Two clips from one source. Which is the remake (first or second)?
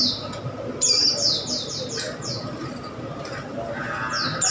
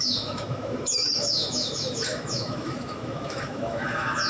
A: second